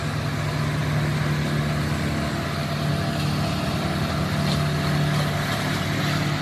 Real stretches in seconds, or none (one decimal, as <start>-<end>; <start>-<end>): 0.0-6.4